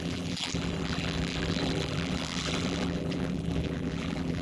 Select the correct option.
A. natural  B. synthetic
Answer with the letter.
B